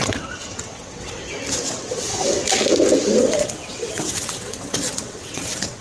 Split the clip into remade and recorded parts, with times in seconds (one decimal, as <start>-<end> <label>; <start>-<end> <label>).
0.0-1.2 remade; 1.2-1.7 recorded; 1.7-2.1 remade; 2.1-3.2 recorded; 3.2-5.8 remade